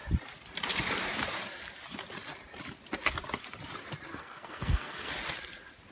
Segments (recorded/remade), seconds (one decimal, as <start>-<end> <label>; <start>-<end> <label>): 0.0-4.1 recorded; 4.1-5.1 remade; 5.1-5.9 recorded